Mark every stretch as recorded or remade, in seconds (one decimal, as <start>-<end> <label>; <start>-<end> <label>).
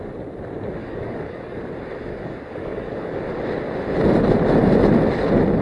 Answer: 0.0-0.8 recorded; 0.8-1.6 remade; 1.6-2.1 recorded; 2.1-3.2 remade; 3.2-5.6 recorded